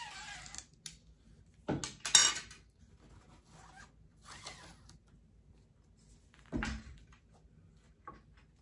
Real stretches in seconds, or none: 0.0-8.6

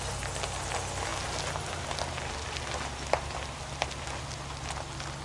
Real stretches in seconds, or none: 0.0-5.2

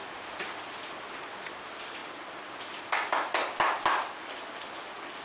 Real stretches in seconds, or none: 0.0-5.2